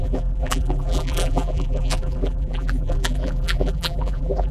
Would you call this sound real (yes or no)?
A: no